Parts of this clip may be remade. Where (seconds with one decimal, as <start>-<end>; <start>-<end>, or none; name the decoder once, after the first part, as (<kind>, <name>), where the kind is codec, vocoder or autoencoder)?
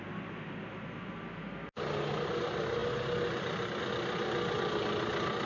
none